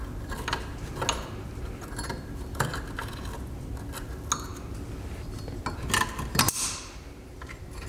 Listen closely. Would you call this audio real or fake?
real